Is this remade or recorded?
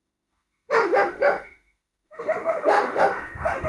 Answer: remade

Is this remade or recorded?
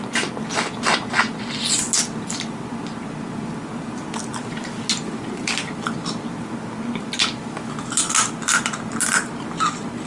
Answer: recorded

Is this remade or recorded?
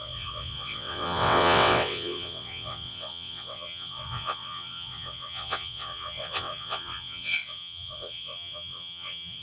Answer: remade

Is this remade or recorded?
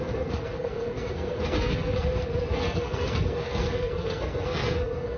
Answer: remade